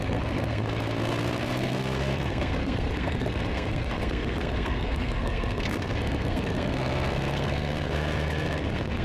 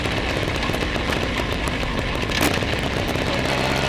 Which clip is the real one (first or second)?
second